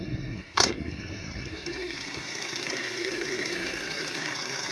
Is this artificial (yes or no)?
yes